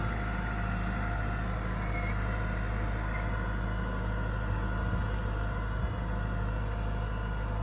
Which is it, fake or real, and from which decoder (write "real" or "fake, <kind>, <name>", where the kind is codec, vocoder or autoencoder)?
real